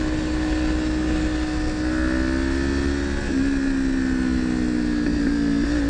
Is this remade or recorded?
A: recorded